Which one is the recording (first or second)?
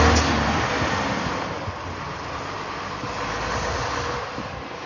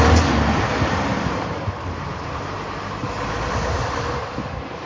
first